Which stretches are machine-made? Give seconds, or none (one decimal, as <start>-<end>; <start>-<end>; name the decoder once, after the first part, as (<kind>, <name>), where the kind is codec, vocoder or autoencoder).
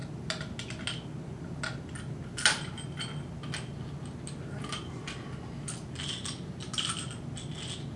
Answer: none